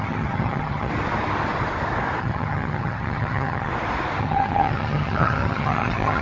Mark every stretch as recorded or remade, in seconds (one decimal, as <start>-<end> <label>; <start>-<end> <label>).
0.0-0.9 remade; 0.9-2.2 recorded; 2.2-3.7 remade; 3.7-4.2 recorded; 4.2-6.2 remade